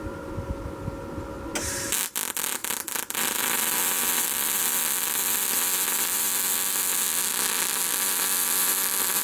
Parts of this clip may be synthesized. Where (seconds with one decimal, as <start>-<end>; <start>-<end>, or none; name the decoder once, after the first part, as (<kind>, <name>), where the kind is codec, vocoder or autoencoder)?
none